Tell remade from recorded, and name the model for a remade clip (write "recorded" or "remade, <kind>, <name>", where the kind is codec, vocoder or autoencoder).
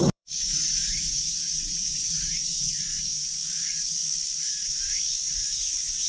remade, codec, DAC